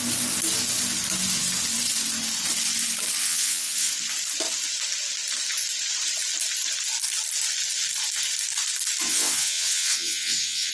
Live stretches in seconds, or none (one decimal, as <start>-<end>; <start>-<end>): 0.0-3.2; 3.9-9.1